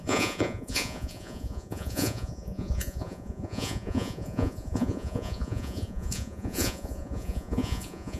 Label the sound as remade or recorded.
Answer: remade